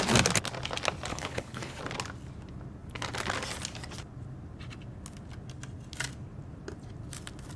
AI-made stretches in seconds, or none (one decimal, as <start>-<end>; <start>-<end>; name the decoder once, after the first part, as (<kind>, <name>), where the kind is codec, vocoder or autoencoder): 1.1-1.8 (codec, HILCodec)